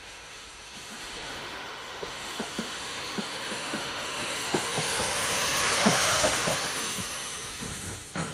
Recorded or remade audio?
remade